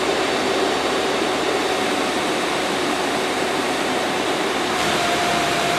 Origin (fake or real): fake